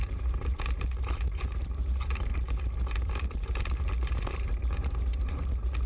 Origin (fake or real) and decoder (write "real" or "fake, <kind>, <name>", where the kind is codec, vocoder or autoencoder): fake, vocoder, BigVGAN v2